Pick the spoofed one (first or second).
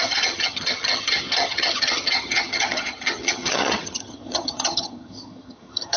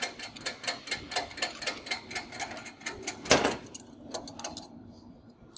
first